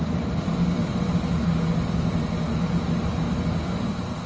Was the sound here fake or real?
real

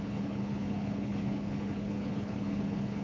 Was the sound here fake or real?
fake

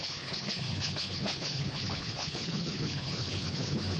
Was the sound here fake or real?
fake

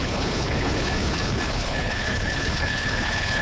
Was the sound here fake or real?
fake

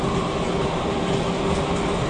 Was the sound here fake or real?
real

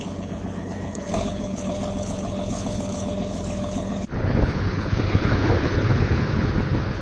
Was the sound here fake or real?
fake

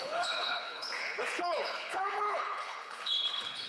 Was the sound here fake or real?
fake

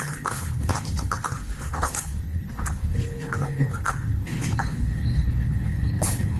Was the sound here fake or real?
fake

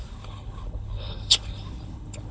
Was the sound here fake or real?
fake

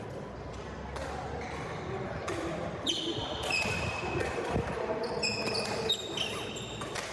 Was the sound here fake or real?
real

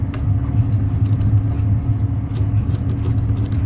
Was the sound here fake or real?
real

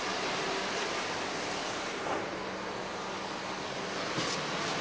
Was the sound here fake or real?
real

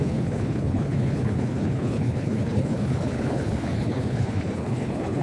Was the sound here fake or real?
fake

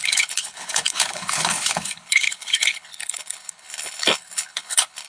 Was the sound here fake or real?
fake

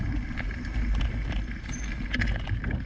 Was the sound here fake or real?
real